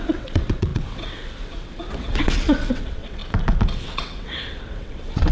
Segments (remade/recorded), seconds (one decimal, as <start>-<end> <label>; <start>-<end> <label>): 0.0-3.2 remade; 3.2-3.8 recorded; 3.8-5.3 remade